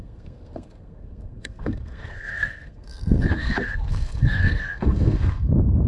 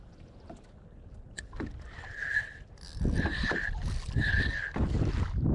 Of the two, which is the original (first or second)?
second